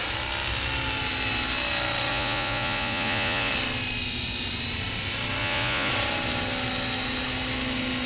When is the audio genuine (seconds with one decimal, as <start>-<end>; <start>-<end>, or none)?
0.0-2.1; 3.5-5.4; 5.9-8.1